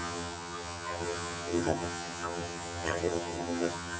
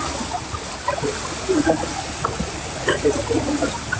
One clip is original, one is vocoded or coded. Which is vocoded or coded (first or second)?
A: first